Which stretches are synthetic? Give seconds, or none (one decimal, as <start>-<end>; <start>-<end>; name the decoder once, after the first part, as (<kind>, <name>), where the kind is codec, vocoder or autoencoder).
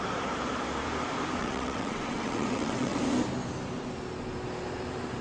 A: 1.4-3.0 (vocoder, WaveNeXt)